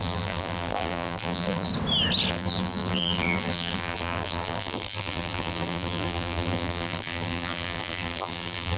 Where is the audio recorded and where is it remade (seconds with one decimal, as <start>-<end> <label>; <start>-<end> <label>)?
0.0-1.7 remade; 1.7-2.3 recorded; 2.3-8.8 remade

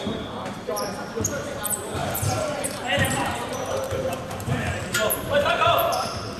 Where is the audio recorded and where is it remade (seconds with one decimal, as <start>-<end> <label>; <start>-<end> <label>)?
0.0-6.4 remade

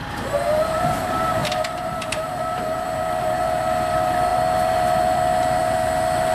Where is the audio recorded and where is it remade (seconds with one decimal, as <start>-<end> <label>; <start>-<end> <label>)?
0.0-6.3 remade

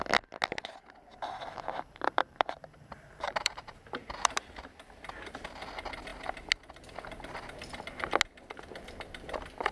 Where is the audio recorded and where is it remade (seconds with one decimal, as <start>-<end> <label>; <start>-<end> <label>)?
0.0-1.1 recorded; 1.1-5.4 remade; 5.4-9.7 recorded

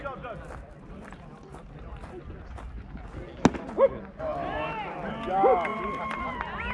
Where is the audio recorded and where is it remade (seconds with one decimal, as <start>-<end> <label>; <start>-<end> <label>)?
0.0-1.3 remade; 1.3-5.3 recorded; 5.3-6.7 remade